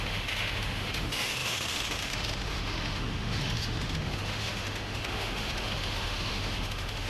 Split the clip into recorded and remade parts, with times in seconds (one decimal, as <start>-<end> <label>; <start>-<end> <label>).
0.0-7.1 remade

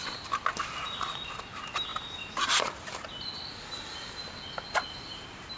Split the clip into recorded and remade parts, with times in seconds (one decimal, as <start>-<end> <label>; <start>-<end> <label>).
0.0-1.9 recorded; 1.9-2.7 remade; 2.7-5.6 recorded